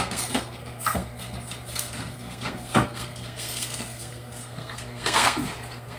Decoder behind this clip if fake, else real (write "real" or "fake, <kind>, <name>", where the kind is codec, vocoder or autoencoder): fake, codec, SNAC